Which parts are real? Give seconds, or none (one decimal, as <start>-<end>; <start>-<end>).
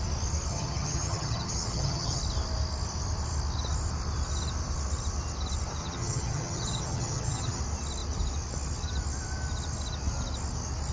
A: 0.0-0.5; 2.2-5.8; 7.6-10.9